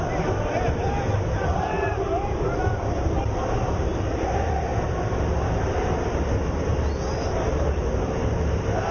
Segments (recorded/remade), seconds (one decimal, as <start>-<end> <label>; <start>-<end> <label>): 0.0-8.9 remade